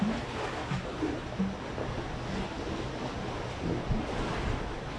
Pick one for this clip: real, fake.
real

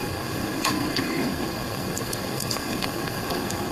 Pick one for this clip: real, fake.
fake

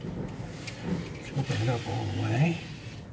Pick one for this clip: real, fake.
real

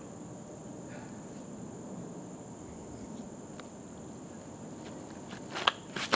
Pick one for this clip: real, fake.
real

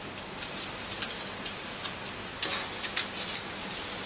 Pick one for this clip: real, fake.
real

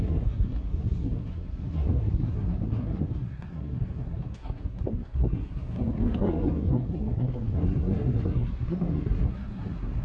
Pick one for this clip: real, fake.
fake